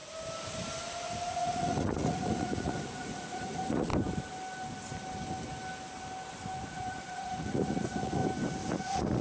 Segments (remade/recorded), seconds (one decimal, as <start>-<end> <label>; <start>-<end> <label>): 0.0-1.3 recorded; 1.3-3.9 remade; 3.9-6.6 recorded; 6.6-8.2 remade; 8.2-8.7 recorded; 8.7-9.2 remade